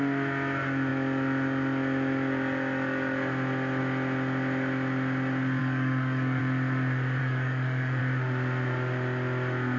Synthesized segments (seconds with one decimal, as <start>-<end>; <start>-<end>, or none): 5.6-6.4; 7.2-8.0